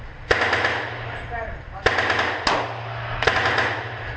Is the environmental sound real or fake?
real